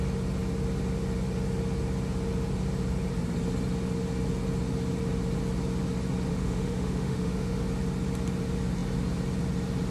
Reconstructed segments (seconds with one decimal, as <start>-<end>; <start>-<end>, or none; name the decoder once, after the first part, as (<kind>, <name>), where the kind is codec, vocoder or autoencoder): 6.3-7.6 (autoencoder, DAC-VAE)